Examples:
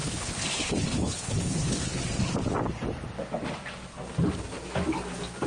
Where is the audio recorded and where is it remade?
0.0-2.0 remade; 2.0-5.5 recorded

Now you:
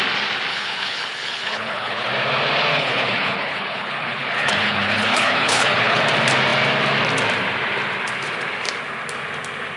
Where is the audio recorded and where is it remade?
0.0-0.5 recorded; 0.5-2.1 remade; 2.1-2.7 recorded; 2.7-6.0 remade; 6.0-9.8 recorded

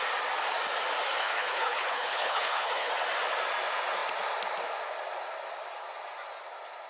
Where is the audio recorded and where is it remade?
0.0-1.2 recorded; 1.2-2.9 remade; 2.9-6.9 recorded

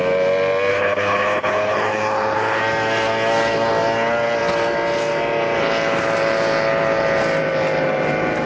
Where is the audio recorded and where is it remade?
0.0-0.7 recorded; 0.7-2.6 remade; 2.6-8.5 recorded

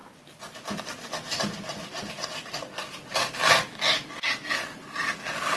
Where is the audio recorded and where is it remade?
0.0-5.6 recorded

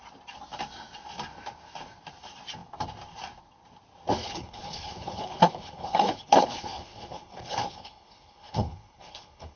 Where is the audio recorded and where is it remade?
0.0-4.2 recorded; 4.2-9.6 remade

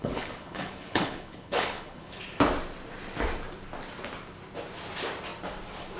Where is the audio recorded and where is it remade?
0.0-2.2 remade; 2.2-6.0 recorded